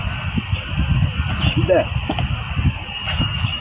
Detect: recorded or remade recorded